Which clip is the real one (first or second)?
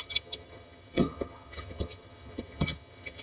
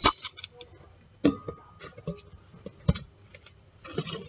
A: second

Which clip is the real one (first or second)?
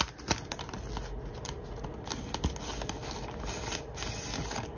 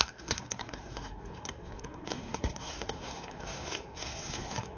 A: first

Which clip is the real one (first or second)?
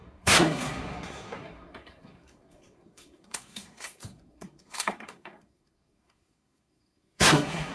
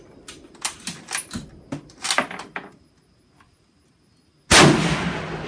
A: second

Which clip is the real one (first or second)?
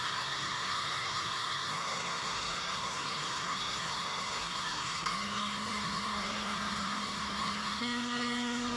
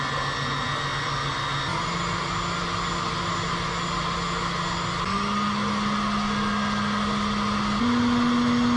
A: second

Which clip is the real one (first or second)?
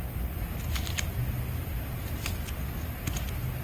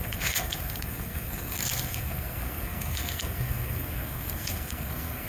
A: first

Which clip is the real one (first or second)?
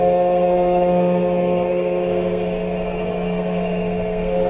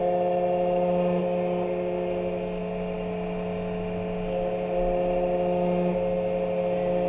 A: second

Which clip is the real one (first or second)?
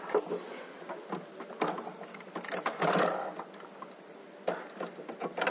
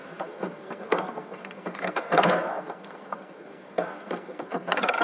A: first